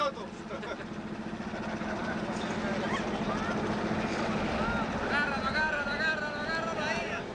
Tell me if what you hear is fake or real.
real